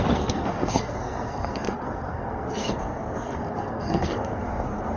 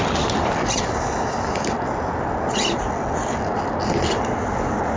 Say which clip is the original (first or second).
second